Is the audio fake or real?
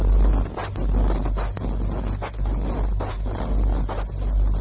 real